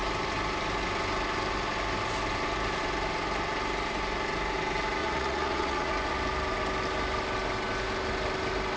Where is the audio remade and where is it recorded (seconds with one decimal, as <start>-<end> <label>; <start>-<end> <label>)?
0.0-5.0 recorded; 5.0-5.9 remade; 5.9-8.8 recorded

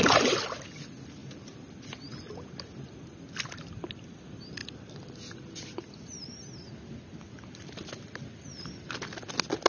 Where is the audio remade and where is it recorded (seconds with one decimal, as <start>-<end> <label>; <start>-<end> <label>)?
0.0-9.7 recorded

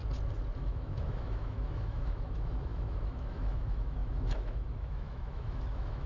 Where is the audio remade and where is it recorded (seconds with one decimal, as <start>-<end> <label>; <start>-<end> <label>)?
0.0-0.6 recorded; 0.6-6.1 remade